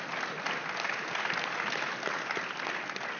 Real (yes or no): yes